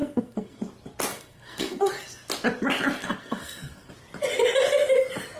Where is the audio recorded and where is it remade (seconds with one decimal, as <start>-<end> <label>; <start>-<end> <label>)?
0.0-0.6 remade; 0.6-1.1 recorded; 1.1-1.9 remade; 1.9-3.0 recorded; 3.0-3.9 remade; 3.9-5.4 recorded